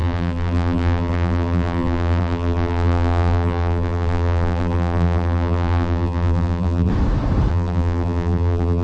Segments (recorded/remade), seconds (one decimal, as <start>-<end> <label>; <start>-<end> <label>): 0.0-6.9 remade; 6.9-7.5 recorded; 7.5-8.8 remade